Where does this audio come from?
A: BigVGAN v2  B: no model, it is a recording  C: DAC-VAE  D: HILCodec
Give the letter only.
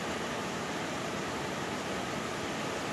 B